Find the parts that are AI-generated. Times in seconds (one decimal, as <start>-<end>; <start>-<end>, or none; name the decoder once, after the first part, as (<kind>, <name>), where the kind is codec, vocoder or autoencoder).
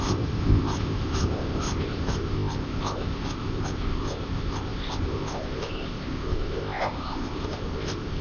0.0-8.2 (codec, ZipCodec)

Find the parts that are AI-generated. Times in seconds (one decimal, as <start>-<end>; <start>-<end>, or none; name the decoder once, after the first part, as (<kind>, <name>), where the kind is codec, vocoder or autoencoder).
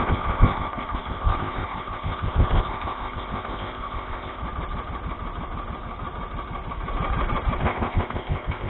0.0-4.4 (codec, ZipCodec); 7.6-8.7